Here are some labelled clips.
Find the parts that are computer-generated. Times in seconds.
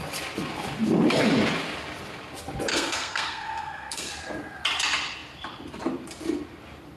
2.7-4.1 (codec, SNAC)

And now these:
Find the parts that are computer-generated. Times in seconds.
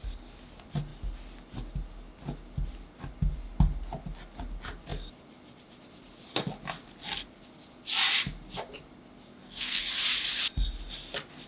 9.3-9.8 (codec, SNAC)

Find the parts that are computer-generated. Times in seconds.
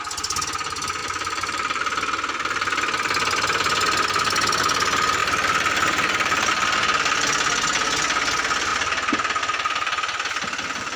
1.0-1.9 (vocoder, BigVGAN v2); 5.2-6.5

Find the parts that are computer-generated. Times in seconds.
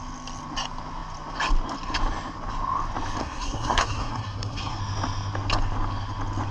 3.2-4.8 (codec, SNAC)